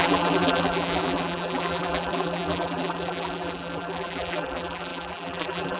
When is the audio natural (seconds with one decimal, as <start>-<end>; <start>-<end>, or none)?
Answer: none